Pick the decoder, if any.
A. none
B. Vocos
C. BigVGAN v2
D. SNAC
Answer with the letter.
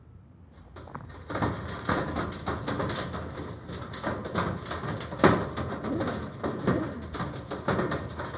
A